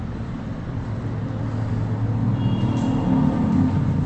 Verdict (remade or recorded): recorded